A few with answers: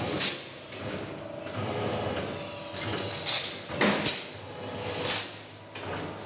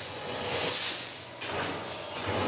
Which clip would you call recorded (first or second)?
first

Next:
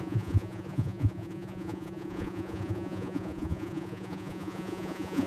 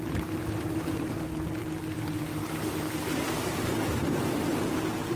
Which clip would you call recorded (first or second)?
second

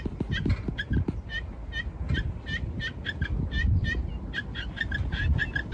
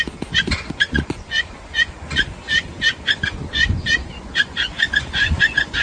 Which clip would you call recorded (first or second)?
first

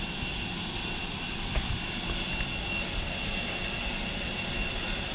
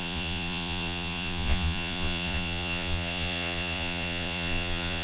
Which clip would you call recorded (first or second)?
first